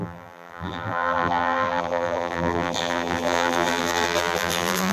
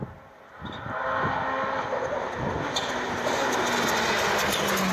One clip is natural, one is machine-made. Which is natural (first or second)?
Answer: second